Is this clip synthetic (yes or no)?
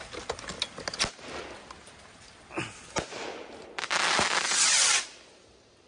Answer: no